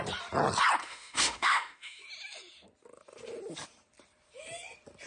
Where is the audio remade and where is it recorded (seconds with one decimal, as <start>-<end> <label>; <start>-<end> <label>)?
0.0-0.8 recorded; 0.8-2.0 remade; 2.0-5.1 recorded